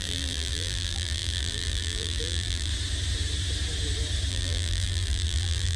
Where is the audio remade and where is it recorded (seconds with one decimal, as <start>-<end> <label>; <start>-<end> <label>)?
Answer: 0.0-2.7 remade; 2.7-4.3 recorded; 4.3-5.8 remade